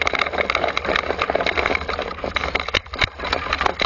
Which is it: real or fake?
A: real